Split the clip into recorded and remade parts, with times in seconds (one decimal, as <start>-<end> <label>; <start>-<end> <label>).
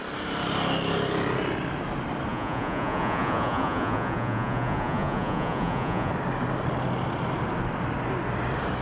0.0-2.3 recorded; 2.3-6.1 remade; 6.1-8.8 recorded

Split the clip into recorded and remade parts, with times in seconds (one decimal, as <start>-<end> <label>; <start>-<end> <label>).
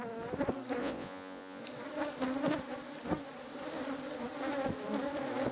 0.0-0.8 recorded; 0.8-1.6 remade; 1.6-5.5 recorded